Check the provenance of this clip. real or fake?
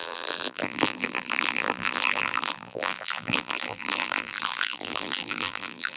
fake